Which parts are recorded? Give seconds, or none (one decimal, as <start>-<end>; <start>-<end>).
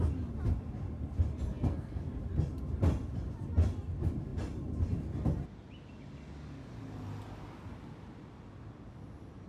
0.0-1.5; 2.1-9.5